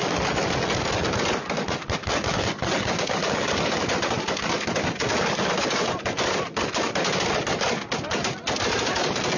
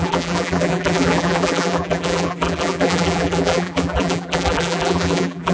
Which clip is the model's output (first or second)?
second